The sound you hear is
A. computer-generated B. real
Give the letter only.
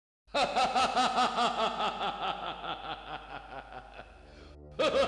B